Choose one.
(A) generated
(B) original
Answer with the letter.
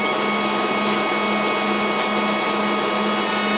B